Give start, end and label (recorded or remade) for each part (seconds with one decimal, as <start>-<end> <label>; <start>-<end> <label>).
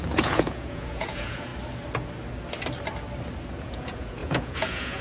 0.0-1.5 remade; 1.5-3.6 recorded; 3.6-5.0 remade